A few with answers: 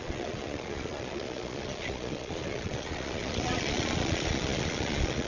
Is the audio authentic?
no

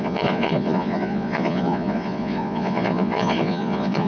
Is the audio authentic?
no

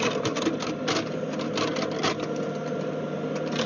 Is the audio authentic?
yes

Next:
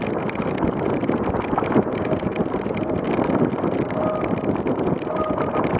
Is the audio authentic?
yes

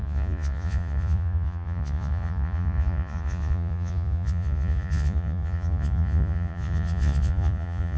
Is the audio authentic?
no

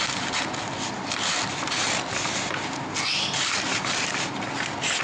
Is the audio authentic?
yes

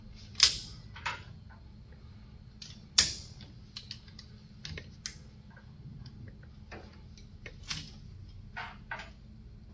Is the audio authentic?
yes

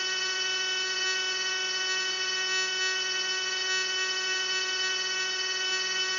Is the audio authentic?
no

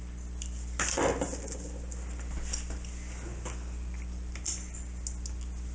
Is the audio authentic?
yes